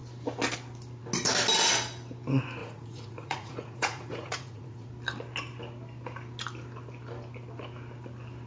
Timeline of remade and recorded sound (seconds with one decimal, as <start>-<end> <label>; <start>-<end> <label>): 0.0-2.6 recorded; 2.6-4.9 remade; 4.9-8.5 recorded